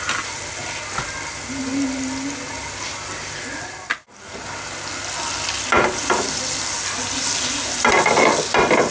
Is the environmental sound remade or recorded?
recorded